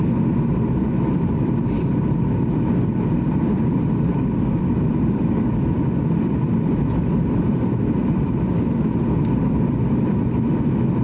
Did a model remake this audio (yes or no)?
yes